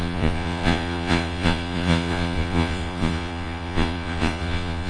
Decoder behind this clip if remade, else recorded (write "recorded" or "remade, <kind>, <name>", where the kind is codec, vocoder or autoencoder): remade, vocoder, Vocos